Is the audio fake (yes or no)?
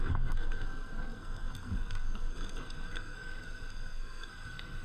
yes